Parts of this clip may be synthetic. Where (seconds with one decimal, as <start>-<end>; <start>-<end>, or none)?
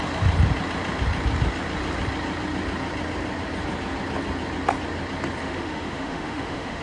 5.4-6.8